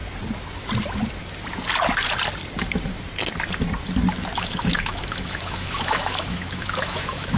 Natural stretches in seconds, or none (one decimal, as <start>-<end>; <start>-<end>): 0.0-4.4

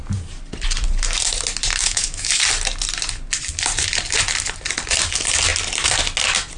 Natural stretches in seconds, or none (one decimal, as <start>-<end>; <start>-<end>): 0.0-1.8; 2.4-6.6

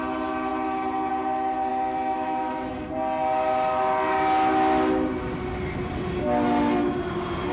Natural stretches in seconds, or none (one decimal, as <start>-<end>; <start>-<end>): 0.0-1.7; 2.9-7.5

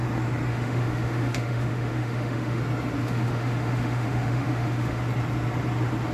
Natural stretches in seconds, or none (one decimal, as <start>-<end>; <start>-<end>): 0.0-0.5; 2.6-3.0; 5.0-6.1

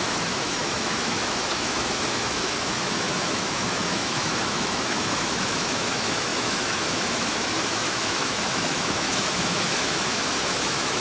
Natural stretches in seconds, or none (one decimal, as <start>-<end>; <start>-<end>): none

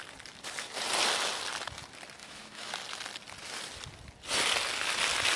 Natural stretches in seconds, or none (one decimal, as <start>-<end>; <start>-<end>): 0.0-2.2; 2.7-5.4

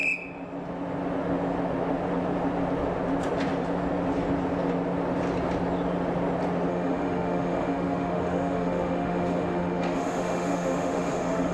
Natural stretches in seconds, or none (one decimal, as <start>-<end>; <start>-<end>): 0.0-6.7